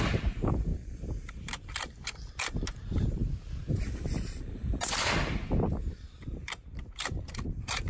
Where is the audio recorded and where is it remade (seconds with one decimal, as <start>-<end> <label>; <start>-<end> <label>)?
0.0-0.7 remade; 0.7-2.8 recorded; 2.8-3.2 remade; 3.2-7.5 recorded; 7.5-7.9 remade